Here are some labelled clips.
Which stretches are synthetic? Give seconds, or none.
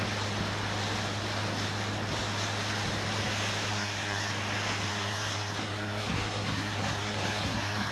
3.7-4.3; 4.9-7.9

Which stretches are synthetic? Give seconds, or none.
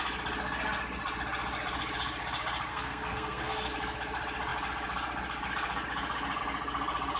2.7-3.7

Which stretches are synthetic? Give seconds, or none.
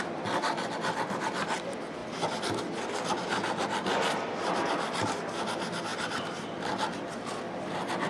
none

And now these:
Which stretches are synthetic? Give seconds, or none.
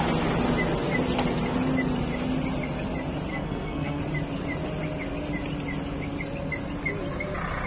3.3-4.0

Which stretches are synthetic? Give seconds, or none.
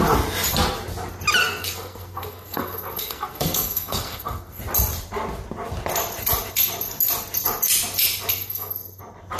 1.4-4.6; 8.3-9.0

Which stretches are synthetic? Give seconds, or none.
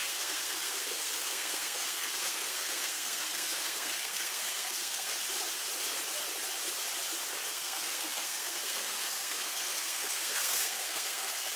0.0-5.1; 7.5-11.6